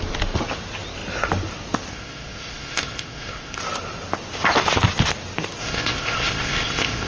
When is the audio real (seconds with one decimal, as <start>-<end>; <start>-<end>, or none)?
0.0-1.9; 3.6-5.6